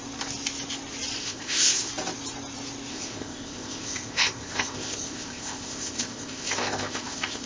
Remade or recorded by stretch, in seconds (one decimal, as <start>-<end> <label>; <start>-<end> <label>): 0.0-1.2 recorded; 1.2-1.9 remade; 1.9-2.9 recorded; 2.9-7.5 remade